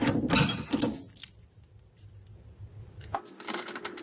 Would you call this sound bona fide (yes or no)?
yes